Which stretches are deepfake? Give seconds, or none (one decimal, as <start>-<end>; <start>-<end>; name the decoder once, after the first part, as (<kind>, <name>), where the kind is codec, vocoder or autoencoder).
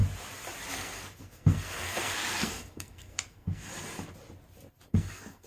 0.7-3.7 (codec, SNAC); 4.9-5.5